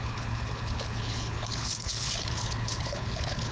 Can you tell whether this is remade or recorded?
remade